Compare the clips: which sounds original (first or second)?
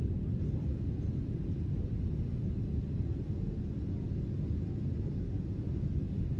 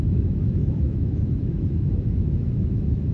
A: first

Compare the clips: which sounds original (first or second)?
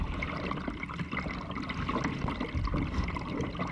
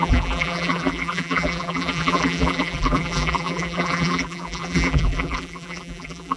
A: first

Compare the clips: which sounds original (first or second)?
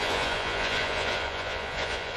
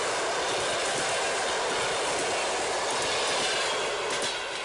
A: second